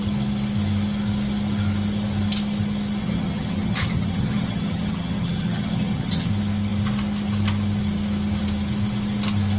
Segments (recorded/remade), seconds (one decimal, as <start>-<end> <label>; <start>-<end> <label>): 0.0-3.0 recorded; 3.0-6.3 remade; 6.3-9.6 recorded